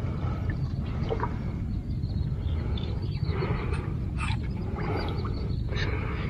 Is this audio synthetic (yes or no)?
no